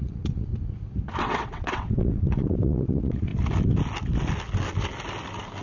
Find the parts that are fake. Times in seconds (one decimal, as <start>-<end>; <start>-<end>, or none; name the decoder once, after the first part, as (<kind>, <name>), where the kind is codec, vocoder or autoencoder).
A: 0.0-0.5 (vocoder, WaveNeXt); 1.1-3.3